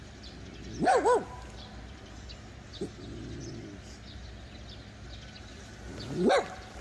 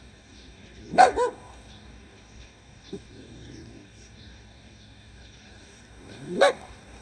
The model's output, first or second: second